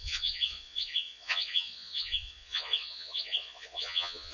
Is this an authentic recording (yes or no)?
no